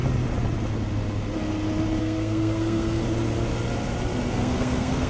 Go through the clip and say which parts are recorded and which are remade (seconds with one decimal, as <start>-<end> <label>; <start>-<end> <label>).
0.0-2.0 recorded; 2.0-3.0 remade; 3.0-4.3 recorded; 4.3-5.1 remade